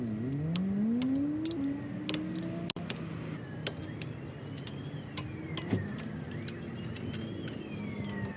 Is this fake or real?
real